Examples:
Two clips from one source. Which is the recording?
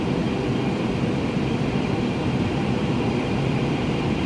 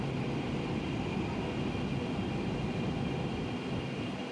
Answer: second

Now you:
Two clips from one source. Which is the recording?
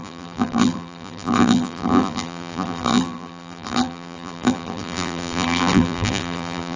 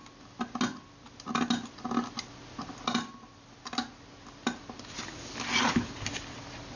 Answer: second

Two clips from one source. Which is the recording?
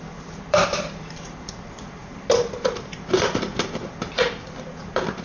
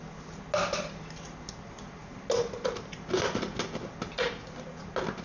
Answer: second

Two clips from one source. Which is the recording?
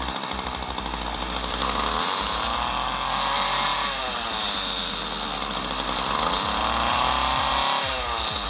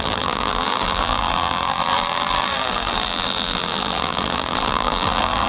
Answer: first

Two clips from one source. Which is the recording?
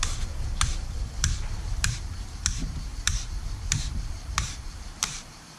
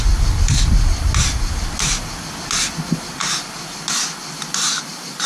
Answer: second